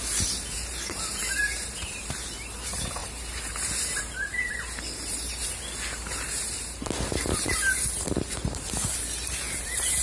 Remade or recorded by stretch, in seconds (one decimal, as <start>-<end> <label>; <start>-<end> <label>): 0.0-10.0 remade